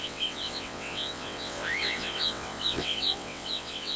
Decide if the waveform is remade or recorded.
remade